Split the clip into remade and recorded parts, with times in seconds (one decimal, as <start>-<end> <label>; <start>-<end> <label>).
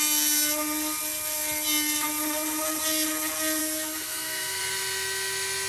0.0-3.6 recorded; 3.6-4.6 remade; 4.6-5.7 recorded